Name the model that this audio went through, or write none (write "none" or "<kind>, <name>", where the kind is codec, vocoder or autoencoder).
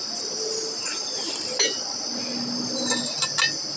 none